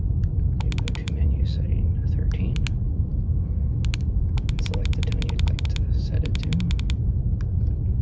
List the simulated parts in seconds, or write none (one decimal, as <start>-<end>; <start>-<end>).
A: 1.0-1.7